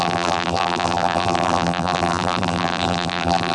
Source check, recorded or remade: remade